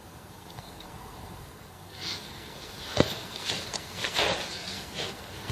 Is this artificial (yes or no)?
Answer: yes